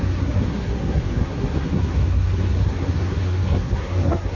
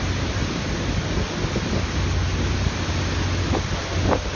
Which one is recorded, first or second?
second